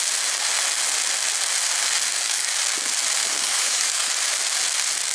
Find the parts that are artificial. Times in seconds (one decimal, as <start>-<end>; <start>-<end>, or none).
2.1-2.6; 3.2-4.1